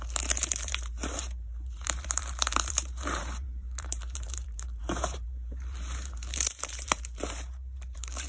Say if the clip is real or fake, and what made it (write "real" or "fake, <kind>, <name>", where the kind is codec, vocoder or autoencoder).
fake, vocoder, BigVGAN v2